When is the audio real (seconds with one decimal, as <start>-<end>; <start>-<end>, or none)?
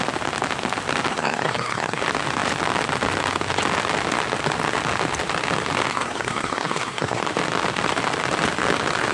0.0-1.1; 2.0-5.9; 7.2-9.1